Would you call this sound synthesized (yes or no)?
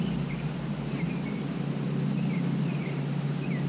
no